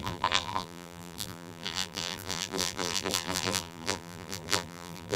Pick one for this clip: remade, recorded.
remade